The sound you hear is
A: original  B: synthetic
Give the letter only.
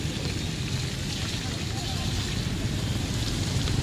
A